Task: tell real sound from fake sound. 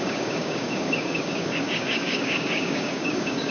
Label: fake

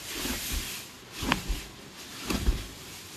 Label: real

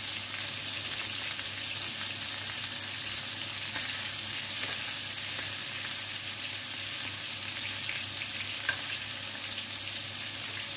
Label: real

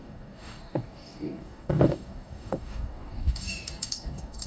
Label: fake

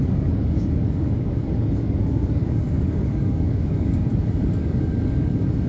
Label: fake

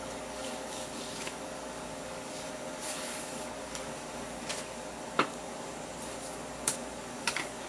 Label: fake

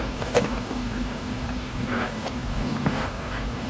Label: fake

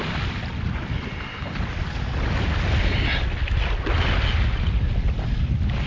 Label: real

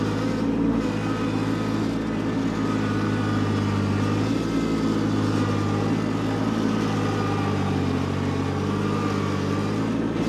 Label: real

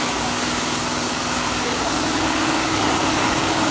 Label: fake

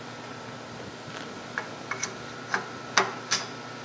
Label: real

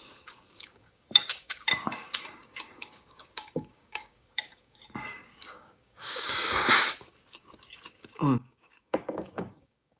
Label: fake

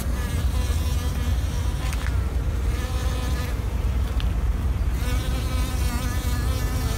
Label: real